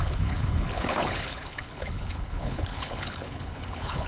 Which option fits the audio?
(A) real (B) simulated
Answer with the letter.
B